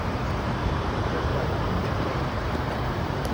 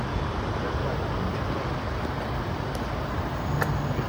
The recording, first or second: second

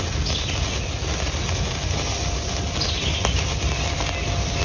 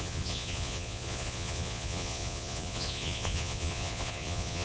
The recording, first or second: first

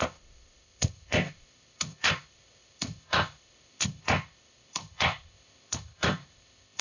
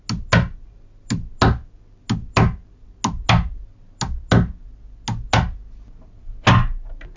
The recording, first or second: second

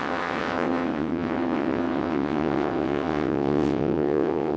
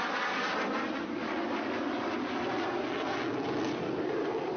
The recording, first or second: second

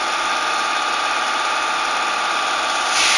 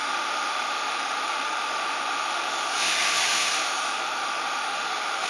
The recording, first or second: first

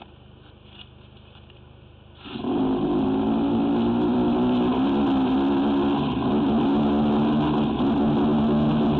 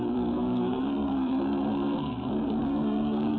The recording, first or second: first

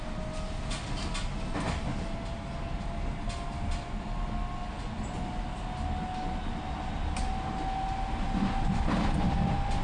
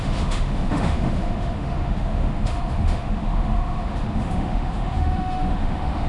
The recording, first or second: first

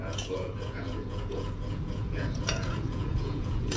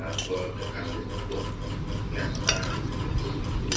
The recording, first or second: second